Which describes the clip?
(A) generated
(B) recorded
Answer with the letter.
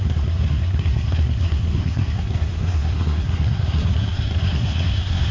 A